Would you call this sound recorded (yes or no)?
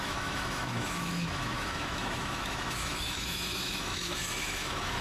no